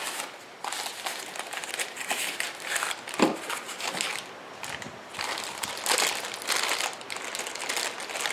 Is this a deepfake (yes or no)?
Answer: no